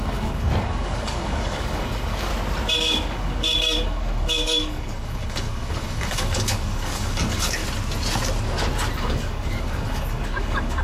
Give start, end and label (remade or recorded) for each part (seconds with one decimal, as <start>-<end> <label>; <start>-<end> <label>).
0.0-2.3 remade; 2.3-2.8 recorded; 2.8-7.6 remade; 7.6-9.0 recorded; 9.0-10.8 remade